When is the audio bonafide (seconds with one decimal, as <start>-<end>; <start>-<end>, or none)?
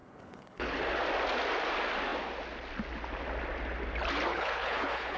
0.7-4.3